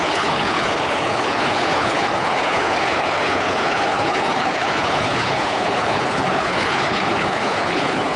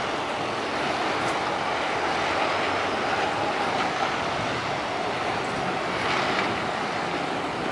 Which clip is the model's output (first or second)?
first